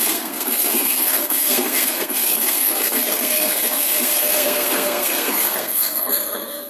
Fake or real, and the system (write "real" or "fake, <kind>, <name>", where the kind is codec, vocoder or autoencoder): fake, codec, SNAC